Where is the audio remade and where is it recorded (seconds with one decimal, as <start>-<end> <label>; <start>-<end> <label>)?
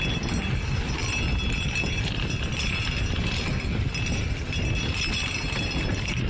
0.0-6.3 recorded